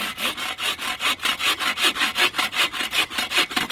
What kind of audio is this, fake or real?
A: real